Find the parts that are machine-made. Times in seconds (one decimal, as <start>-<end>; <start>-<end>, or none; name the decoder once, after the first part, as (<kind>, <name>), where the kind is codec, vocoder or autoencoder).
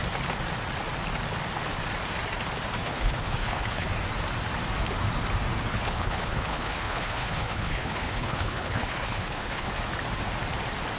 2.8-3.9 (codec, HILCodec); 5.7-9.7